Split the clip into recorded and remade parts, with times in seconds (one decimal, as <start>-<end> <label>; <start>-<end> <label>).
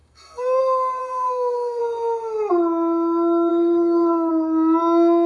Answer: 0.0-0.6 remade; 0.6-1.0 recorded; 1.0-1.8 remade; 1.8-3.5 recorded; 3.5-4.3 remade; 4.3-5.3 recorded